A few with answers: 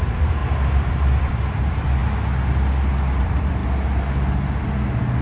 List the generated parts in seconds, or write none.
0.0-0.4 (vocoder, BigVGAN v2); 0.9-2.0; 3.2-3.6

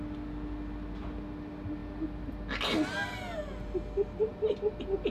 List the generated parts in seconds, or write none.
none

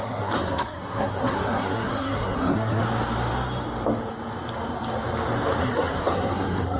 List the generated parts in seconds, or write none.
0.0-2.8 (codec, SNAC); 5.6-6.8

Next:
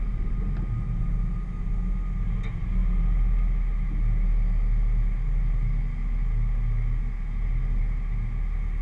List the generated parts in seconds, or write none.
none

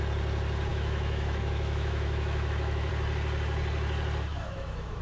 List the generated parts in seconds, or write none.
0.7-2.9 (autoencoder, DAC-VAE); 4.3-5.0

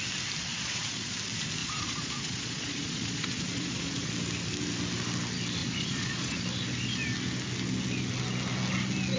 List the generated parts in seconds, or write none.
0.5-1.1 (vocoder, Vocos); 1.6-4.1; 5.6-6.4